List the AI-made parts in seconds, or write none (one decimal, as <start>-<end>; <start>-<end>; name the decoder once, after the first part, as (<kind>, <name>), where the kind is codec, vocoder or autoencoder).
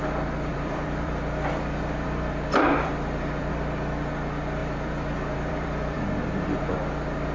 0.5-3.5 (vocoder, BigVGAN v2); 4.6-6.6